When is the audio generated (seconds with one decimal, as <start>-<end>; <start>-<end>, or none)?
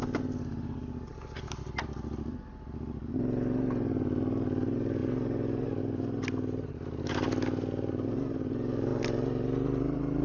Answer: none